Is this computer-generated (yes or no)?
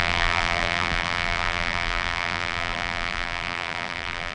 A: yes